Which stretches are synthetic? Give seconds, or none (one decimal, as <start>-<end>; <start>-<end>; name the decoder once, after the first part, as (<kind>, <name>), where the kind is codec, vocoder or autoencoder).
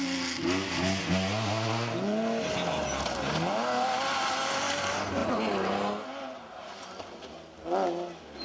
none